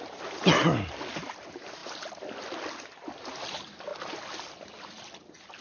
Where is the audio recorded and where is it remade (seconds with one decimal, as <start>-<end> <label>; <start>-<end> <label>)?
0.0-5.6 recorded